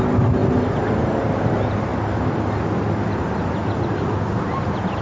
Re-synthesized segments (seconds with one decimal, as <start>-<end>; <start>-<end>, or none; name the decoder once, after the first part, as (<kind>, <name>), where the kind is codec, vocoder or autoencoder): none